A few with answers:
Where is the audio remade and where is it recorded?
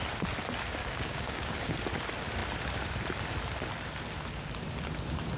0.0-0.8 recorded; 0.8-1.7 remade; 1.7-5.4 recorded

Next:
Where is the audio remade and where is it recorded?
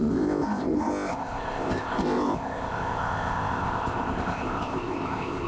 0.0-5.5 remade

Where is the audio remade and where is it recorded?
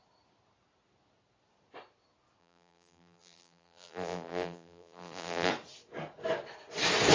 0.0-2.4 recorded; 2.4-5.5 remade; 5.5-7.1 recorded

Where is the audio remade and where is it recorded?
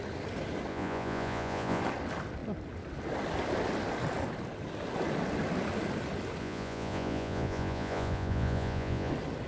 0.0-0.7 recorded; 0.7-1.8 remade; 1.8-6.4 recorded; 6.4-9.1 remade; 9.1-9.5 recorded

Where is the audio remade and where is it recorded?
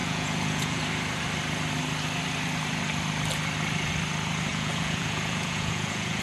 0.0-0.8 remade; 0.8-4.5 recorded; 4.5-6.2 remade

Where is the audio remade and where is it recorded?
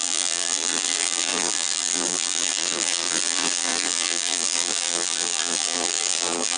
0.0-6.6 remade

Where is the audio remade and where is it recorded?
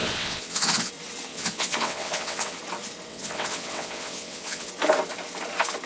0.0-0.9 remade; 0.9-1.3 recorded; 1.3-2.6 remade; 2.6-3.1 recorded; 3.1-4.7 remade; 4.7-5.9 recorded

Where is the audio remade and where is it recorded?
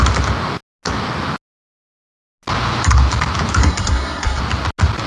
0.0-3.6 recorded; 3.6-4.4 remade; 4.4-5.1 recorded